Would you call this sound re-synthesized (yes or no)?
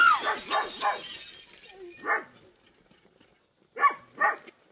no